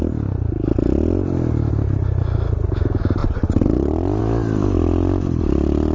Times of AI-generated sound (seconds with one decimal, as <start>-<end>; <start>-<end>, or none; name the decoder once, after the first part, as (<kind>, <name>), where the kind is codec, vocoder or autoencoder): none